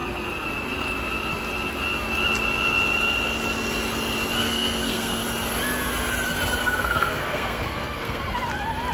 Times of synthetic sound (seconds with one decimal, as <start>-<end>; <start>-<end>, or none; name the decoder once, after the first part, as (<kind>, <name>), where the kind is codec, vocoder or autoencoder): 4.4-5.2 (codec, SNAC); 6.6-8.2